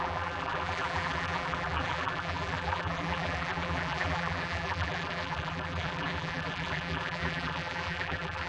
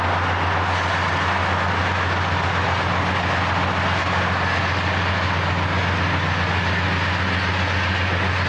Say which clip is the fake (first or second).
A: first